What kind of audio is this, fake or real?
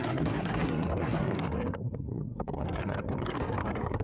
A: fake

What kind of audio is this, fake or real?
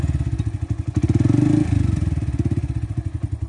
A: real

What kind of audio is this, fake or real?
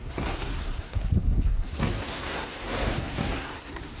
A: fake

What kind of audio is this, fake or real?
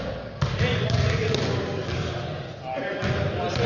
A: real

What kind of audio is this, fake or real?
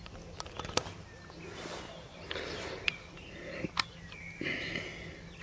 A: real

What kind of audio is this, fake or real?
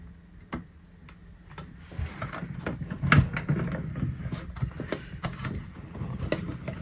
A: real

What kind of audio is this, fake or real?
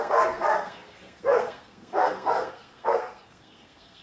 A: fake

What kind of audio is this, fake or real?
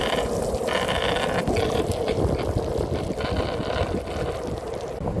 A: real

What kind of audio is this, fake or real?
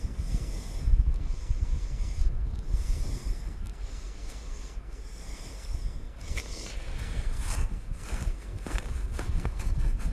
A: fake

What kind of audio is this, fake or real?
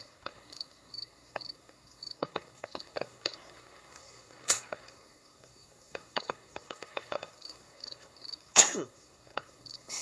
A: fake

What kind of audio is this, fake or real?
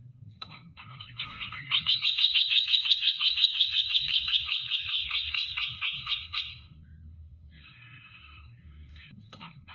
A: fake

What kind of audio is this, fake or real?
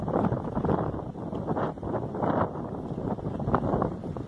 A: real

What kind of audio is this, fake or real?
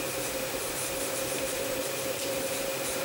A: real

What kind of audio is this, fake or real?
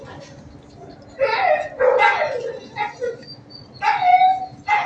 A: real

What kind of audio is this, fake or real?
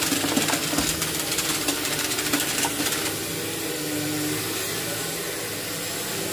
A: real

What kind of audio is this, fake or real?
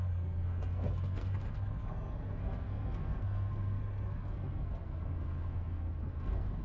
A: fake